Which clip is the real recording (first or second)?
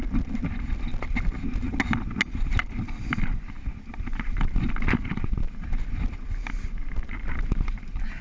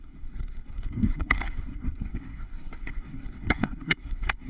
first